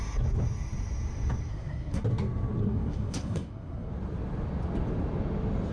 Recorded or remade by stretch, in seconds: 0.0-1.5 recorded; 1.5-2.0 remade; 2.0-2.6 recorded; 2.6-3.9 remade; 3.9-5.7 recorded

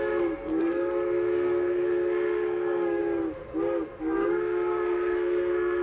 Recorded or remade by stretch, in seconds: 0.0-3.0 remade; 3.0-4.0 recorded; 4.0-5.8 remade

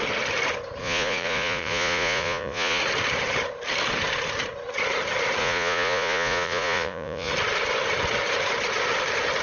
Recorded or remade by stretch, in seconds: 0.0-0.8 recorded; 0.8-2.8 remade; 2.8-5.4 recorded; 5.4-7.3 remade; 7.3-9.4 recorded

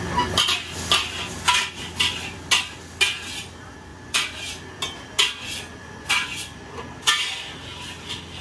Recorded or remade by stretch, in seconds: 0.0-3.9 recorded; 3.9-4.4 remade; 4.4-5.7 recorded; 5.7-6.8 remade; 6.8-8.4 recorded

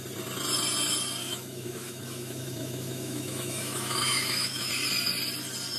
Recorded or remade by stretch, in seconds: 0.0-1.2 recorded; 1.2-4.7 remade; 4.7-5.8 recorded

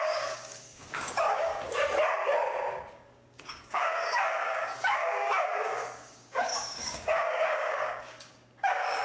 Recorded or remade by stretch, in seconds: 0.0-1.5 remade; 1.5-2.9 recorded; 2.9-9.0 remade